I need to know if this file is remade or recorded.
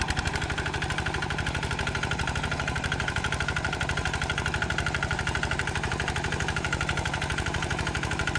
remade